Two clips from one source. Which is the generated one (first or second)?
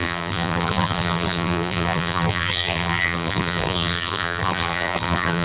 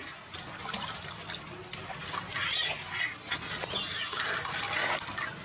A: first